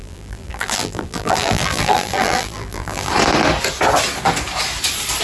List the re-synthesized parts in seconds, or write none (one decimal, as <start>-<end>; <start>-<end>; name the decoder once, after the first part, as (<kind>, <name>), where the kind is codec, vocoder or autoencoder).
0.0-3.1 (vocoder, BigVGAN v2)